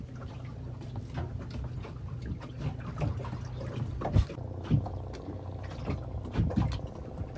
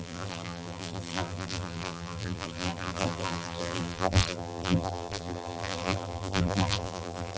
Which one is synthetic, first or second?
second